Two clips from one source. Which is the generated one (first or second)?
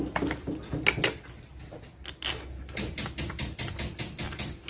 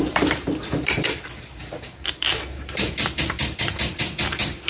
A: second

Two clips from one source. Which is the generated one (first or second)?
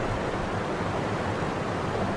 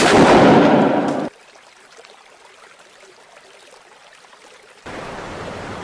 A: second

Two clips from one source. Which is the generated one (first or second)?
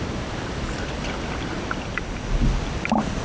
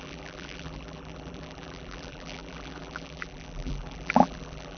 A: second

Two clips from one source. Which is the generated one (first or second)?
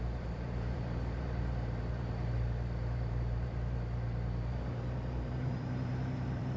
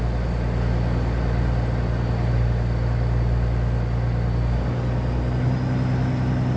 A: first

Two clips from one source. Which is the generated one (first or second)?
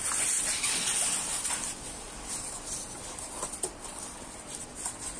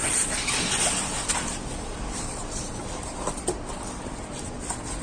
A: first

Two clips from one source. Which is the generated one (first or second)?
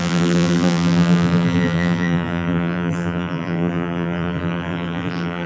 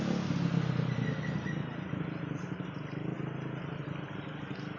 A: first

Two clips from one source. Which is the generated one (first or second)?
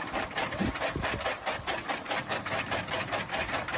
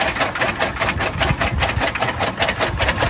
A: first